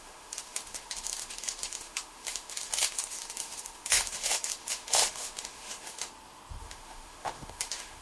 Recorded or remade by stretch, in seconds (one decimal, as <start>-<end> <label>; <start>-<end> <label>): 0.0-6.1 remade; 6.1-6.6 recorded; 6.6-8.0 remade